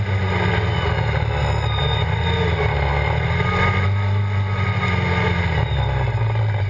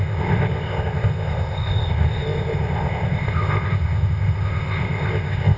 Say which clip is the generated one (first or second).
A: second